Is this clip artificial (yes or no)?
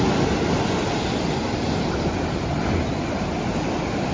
no